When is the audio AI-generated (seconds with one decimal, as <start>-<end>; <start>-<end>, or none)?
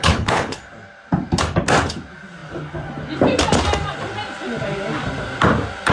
0.0-0.6